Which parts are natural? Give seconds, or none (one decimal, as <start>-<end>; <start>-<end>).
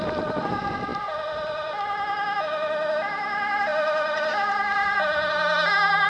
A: 0.0-6.1